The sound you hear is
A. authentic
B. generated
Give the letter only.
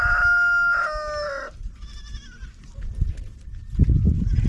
A